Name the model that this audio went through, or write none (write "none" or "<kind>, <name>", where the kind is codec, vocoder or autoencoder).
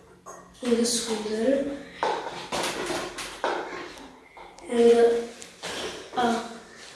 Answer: none